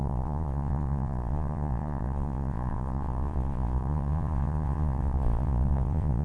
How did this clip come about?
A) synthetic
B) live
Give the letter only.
A